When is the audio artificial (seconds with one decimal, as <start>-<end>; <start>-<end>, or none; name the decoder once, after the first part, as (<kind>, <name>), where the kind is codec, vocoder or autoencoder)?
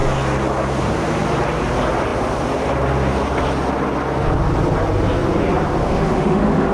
5.8-6.7 (autoencoder, DAC-VAE)